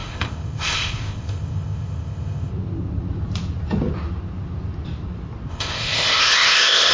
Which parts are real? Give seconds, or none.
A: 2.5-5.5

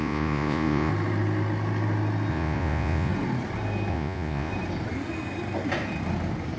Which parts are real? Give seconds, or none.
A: 0.9-2.3; 3.1-3.9; 4.5-6.6